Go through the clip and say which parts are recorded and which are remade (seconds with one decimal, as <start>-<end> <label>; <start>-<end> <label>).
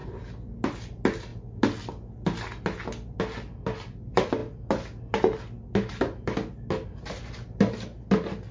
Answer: 0.0-8.5 recorded